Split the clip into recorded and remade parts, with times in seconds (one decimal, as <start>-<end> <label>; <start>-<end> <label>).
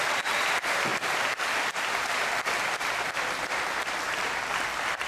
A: 0.0-5.1 remade